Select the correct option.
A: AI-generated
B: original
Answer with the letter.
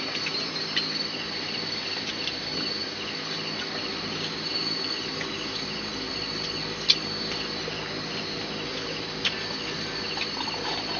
B